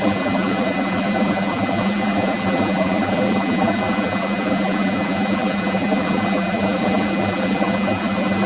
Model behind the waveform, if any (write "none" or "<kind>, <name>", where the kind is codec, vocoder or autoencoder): vocoder, BigVGAN v2